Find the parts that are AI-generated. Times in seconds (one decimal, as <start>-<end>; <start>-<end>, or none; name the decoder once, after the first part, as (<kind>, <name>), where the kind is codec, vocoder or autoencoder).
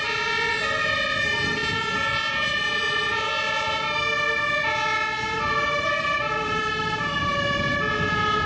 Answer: none